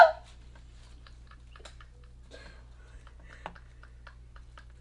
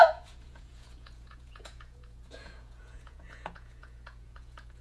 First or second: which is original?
first